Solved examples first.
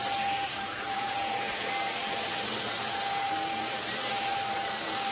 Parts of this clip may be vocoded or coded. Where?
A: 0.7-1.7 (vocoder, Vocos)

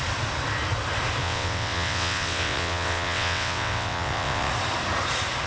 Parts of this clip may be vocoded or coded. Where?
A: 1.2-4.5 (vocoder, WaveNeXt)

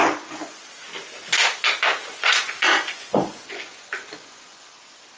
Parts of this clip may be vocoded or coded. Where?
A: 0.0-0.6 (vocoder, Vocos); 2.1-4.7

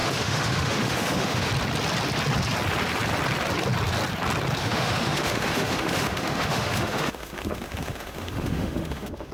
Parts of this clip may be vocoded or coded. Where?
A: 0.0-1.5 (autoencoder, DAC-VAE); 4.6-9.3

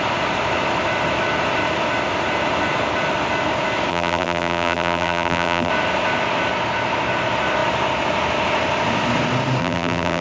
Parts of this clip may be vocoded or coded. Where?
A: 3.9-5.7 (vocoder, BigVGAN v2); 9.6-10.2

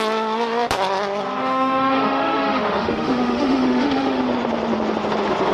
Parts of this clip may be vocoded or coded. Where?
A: 1.4-4.2 (autoencoder, DAC-VAE)

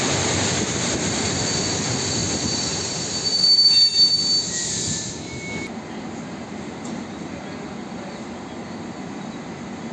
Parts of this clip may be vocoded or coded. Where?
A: none